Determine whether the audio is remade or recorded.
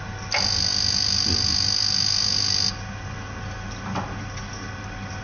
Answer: recorded